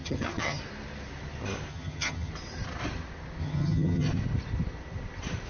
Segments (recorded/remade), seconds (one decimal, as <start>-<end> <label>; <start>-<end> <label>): 0.0-0.6 remade; 0.6-1.7 recorded; 1.7-2.3 remade; 2.3-3.4 recorded; 3.4-4.1 remade; 4.1-5.5 recorded